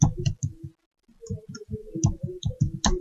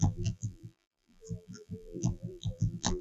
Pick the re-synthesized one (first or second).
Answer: second